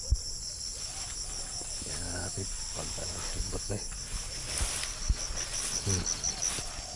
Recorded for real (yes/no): yes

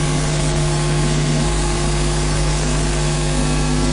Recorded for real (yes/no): no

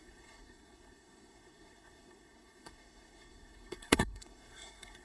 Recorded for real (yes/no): no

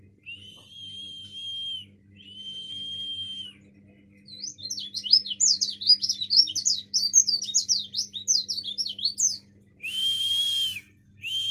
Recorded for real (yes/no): yes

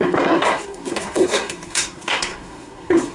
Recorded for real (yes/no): no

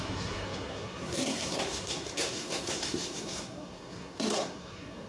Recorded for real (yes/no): no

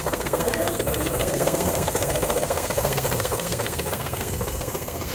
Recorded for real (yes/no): no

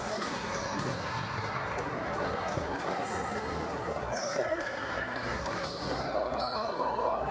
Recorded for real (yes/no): no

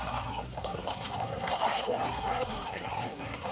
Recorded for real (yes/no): no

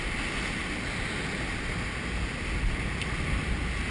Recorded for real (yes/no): yes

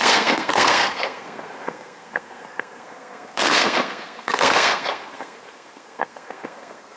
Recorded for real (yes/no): no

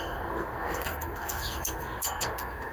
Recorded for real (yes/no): no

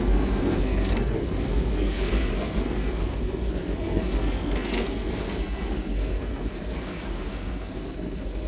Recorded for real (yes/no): no